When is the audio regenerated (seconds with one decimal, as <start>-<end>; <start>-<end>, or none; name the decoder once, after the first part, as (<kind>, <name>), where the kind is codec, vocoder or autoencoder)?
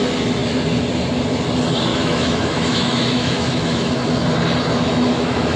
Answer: 1.9-3.9 (autoencoder, DAC-VAE); 4.7-5.6